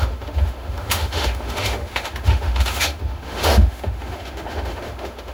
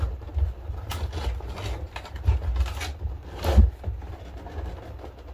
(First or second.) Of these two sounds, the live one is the second